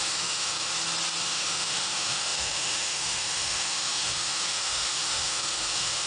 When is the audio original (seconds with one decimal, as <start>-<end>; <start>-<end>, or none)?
0.7-1.2